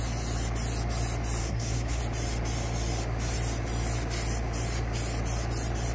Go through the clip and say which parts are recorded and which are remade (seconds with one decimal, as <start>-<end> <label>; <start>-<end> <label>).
0.0-1.4 recorded; 1.4-2.0 remade; 2.0-5.9 recorded